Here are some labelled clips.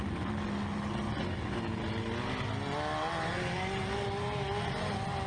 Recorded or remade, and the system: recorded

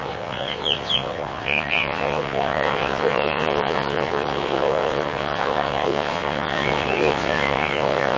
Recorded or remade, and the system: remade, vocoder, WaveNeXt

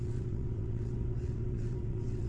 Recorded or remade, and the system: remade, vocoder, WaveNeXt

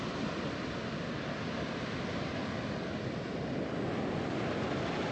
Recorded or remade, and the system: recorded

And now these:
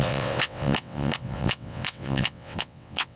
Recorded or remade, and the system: remade, vocoder, WaveNeXt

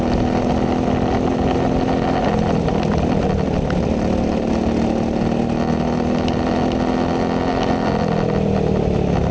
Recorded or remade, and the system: recorded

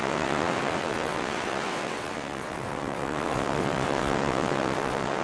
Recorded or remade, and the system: remade, vocoder, WaveNeXt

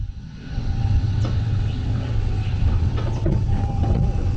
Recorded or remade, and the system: remade, vocoder, WaveNeXt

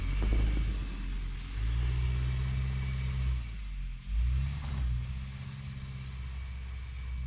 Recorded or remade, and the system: recorded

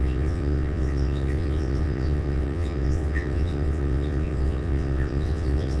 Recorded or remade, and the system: remade, vocoder, WaveNeXt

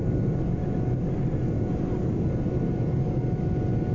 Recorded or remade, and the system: recorded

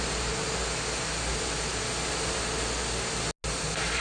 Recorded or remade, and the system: recorded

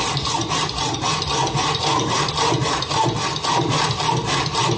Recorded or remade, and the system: recorded